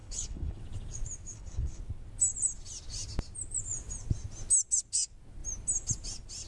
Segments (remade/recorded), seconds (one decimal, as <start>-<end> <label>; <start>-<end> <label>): 0.0-0.6 remade; 0.6-1.3 recorded; 1.3-1.8 remade; 1.8-6.5 recorded

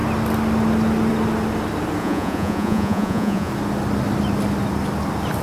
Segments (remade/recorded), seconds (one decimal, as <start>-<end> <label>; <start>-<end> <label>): 0.0-2.0 recorded; 2.0-3.5 remade; 3.5-5.4 recorded

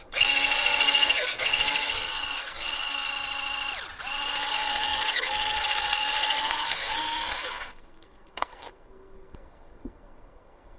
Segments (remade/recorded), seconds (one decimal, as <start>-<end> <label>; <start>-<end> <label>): 0.0-3.1 remade; 3.1-4.5 recorded; 4.5-10.8 remade

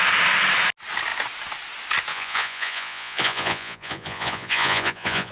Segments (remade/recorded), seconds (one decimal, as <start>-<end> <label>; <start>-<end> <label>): 0.0-2.1 recorded; 2.1-5.3 remade

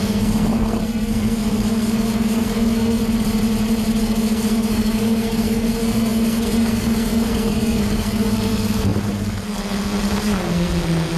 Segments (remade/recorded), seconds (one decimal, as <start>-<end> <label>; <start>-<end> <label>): 0.0-3.0 remade; 3.0-4.0 recorded; 4.0-11.2 remade

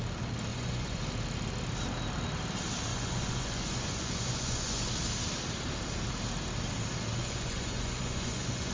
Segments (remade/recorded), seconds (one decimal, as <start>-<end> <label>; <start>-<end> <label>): 0.0-0.5 recorded; 0.5-1.0 remade; 1.0-2.9 recorded; 2.9-4.9 remade; 4.9-7.2 recorded; 7.2-8.7 remade